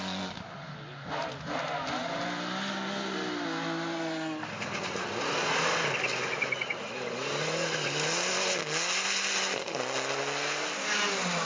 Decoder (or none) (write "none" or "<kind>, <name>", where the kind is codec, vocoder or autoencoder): none